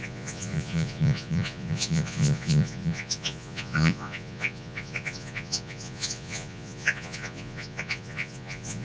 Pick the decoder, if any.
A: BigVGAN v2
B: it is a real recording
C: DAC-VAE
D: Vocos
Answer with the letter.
D